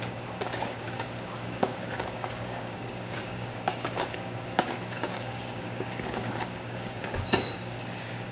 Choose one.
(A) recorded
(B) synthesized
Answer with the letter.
B